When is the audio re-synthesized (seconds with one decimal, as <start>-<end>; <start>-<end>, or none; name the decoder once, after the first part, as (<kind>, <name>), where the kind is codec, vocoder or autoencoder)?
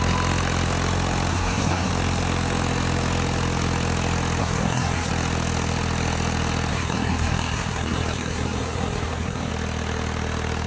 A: 1.3-1.9 (codec, SNAC); 4.4-5.1; 6.7-9.5